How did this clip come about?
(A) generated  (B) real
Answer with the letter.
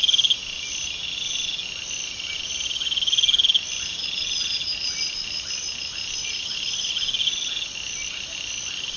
B